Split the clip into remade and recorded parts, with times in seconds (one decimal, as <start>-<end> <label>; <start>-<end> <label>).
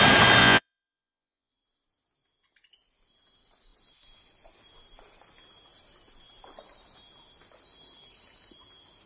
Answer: 0.0-0.4 recorded; 0.4-1.5 remade; 1.5-9.1 recorded